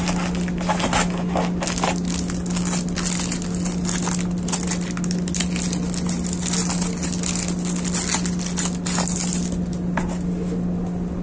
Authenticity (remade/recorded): recorded